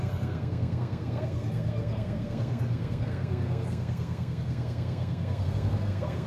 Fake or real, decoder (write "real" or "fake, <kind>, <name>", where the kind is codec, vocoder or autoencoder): fake, codec, SNAC